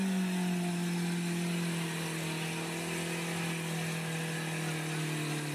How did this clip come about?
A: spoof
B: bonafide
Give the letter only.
B